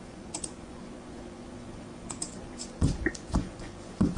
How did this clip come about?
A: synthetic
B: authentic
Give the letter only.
A